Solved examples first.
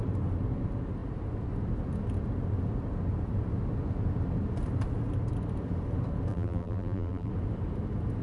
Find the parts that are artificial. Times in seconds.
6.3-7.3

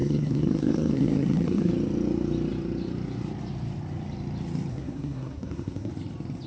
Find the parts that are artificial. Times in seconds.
0.0-1.7; 4.7-5.9

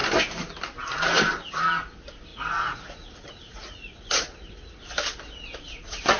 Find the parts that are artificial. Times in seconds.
2.3-4.8

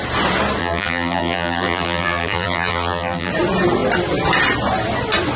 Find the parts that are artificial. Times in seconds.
0.6-3.3

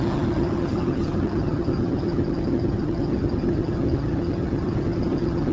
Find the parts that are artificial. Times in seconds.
0.0-5.5

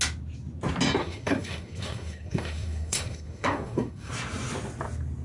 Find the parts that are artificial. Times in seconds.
1.0-4.1

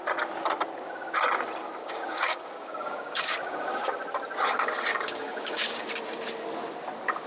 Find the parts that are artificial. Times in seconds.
1.8-3.9; 4.9-5.9